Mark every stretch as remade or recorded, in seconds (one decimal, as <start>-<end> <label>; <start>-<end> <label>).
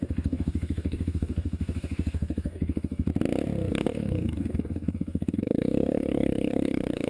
0.0-3.1 remade; 3.1-3.7 recorded; 3.7-7.1 remade